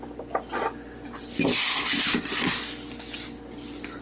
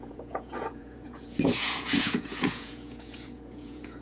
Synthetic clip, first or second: second